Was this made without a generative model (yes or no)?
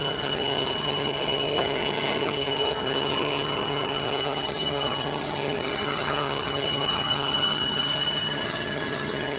no